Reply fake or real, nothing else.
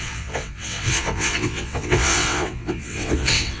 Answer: fake